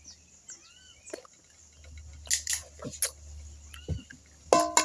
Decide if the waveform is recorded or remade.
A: recorded